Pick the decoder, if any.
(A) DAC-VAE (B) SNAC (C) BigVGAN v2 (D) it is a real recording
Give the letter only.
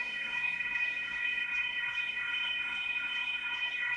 B